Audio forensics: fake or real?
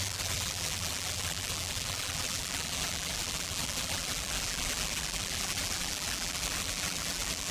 fake